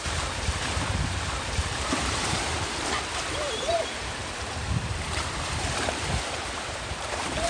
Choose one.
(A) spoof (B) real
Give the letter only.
A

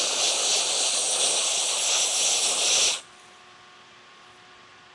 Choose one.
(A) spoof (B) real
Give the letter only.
B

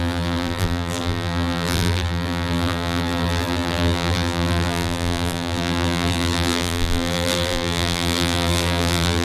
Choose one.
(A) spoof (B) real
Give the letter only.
A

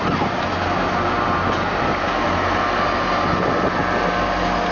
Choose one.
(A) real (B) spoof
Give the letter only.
A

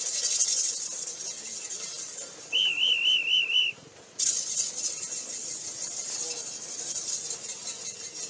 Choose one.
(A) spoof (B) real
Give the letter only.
B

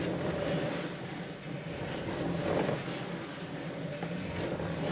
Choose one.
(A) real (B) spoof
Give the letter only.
A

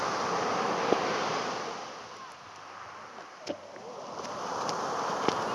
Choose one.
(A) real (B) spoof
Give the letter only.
A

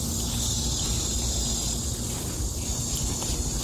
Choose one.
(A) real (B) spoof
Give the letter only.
A